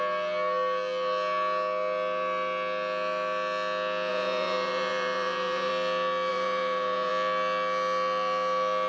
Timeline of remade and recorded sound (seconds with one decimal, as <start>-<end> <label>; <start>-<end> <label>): 0.0-4.1 recorded; 4.1-5.7 remade; 5.7-6.3 recorded; 6.3-7.1 remade; 7.1-8.9 recorded